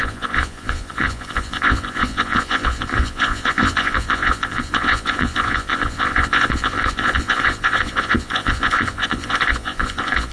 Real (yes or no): no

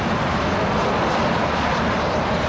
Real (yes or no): yes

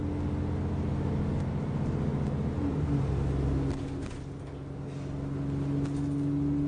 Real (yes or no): yes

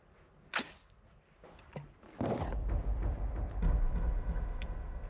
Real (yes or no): yes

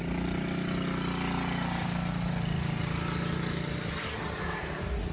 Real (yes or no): yes